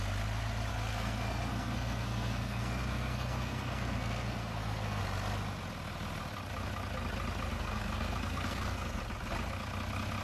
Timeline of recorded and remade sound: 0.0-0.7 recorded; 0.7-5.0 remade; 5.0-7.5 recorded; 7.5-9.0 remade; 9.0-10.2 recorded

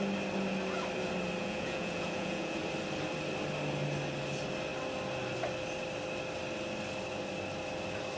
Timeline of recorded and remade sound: 0.0-1.4 recorded; 1.4-2.6 remade; 2.6-8.2 recorded

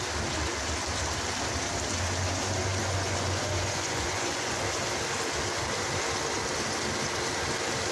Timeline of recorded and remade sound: 0.0-2.8 recorded; 2.8-4.6 remade; 4.6-7.9 recorded

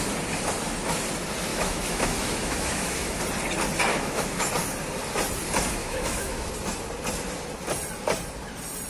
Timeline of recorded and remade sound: 0.0-1.5 recorded; 1.5-3.2 remade; 3.2-3.9 recorded; 3.9-4.5 remade; 4.5-5.8 recorded; 5.8-6.5 remade; 6.5-8.9 recorded

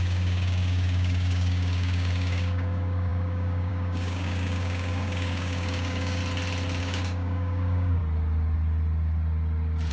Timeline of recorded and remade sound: 0.0-6.2 remade; 6.2-6.8 recorded; 6.8-8.0 remade; 8.0-9.9 recorded

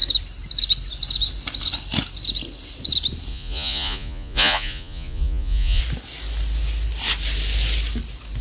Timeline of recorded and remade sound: 0.0-3.3 recorded; 3.3-5.8 remade; 5.8-8.4 recorded